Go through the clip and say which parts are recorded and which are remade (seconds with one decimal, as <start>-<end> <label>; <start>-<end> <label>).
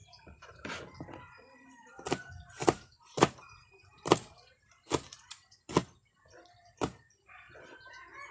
0.0-0.8 remade; 0.8-2.6 recorded; 2.6-4.7 remade; 4.7-8.3 recorded